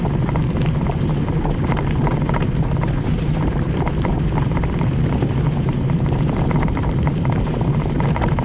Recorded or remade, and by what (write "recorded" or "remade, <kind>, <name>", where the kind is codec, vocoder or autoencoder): remade, vocoder, BigVGAN v2